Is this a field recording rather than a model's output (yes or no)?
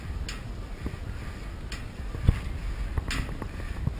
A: yes